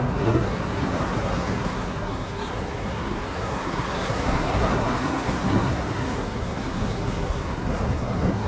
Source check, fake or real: fake